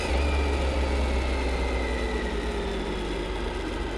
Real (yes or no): yes